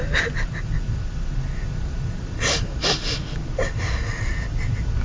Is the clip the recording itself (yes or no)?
yes